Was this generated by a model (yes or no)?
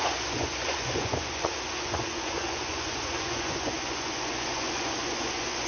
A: yes